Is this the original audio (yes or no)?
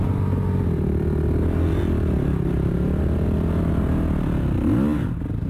yes